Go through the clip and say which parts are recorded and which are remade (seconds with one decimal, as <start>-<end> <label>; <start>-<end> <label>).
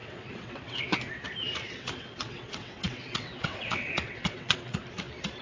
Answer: 0.0-0.8 remade; 0.8-1.6 recorded; 1.6-4.8 remade; 4.8-5.4 recorded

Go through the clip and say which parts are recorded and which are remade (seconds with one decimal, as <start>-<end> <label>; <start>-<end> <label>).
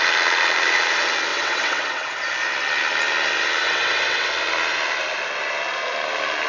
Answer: 0.0-1.3 recorded; 1.3-2.2 remade; 2.2-3.6 recorded; 3.6-4.3 remade; 4.3-6.5 recorded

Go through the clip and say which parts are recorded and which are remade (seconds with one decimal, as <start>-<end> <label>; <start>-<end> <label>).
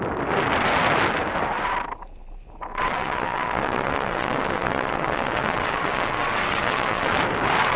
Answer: 0.0-2.7 recorded; 2.7-7.2 remade; 7.2-7.8 recorded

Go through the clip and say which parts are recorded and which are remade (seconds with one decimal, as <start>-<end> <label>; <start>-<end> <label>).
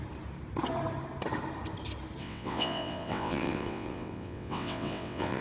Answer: 0.0-2.2 recorded; 2.2-5.4 remade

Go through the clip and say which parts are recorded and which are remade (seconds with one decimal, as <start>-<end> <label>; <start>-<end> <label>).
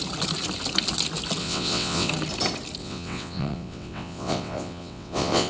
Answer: 0.0-1.4 recorded; 1.4-2.1 remade; 2.1-2.8 recorded; 2.8-5.5 remade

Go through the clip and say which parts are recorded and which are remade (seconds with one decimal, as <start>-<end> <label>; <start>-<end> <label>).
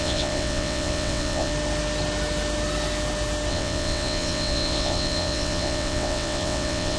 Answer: 0.0-1.5 remade; 1.5-3.5 recorded; 3.5-7.0 remade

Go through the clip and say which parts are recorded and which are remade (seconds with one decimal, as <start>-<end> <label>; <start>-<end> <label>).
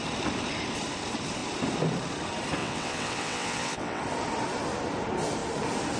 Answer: 0.0-2.6 recorded; 2.6-4.0 remade; 4.0-6.0 recorded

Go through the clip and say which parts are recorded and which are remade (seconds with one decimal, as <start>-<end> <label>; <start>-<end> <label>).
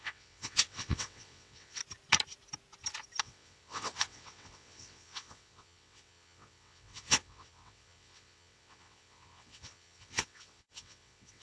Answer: 0.0-1.8 remade; 1.8-3.2 recorded; 3.2-11.4 remade